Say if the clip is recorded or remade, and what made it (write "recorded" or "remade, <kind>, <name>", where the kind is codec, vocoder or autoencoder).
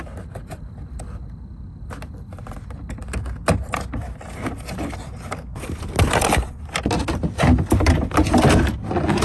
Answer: recorded